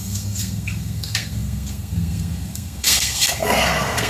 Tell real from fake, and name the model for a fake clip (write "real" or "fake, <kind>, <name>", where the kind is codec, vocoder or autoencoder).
fake, codec, SNAC